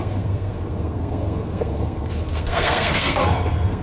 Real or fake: fake